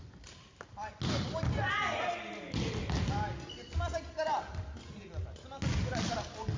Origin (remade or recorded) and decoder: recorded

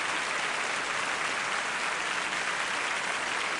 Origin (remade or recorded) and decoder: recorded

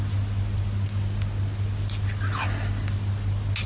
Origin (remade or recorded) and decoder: recorded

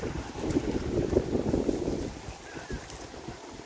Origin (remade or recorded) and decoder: recorded